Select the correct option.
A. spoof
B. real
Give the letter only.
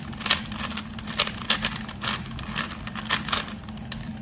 B